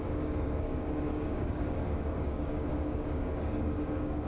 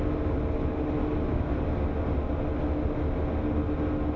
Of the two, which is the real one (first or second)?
second